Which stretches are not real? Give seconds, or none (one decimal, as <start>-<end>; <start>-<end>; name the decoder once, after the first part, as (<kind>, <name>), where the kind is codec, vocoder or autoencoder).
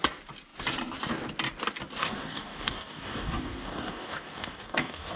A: 2.0-5.2 (codec, DAC)